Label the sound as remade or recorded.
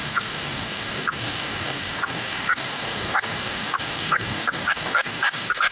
remade